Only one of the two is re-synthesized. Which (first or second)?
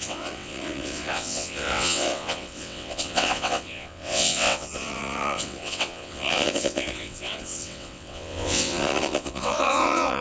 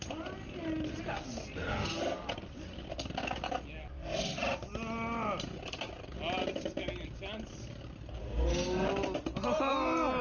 first